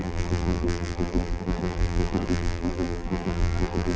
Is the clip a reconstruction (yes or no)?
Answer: yes